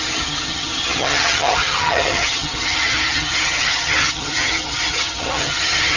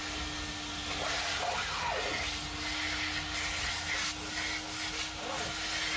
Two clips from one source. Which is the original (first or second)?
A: second